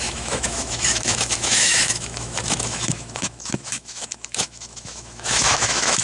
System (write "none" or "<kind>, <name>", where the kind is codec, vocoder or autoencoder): autoencoder, DAC-VAE